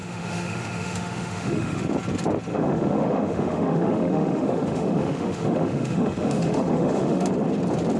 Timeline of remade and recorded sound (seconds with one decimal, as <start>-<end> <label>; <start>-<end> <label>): 0.0-1.8 remade; 1.8-2.5 recorded; 2.5-7.3 remade; 7.3-8.0 recorded